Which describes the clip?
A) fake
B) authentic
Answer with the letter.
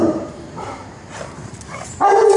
A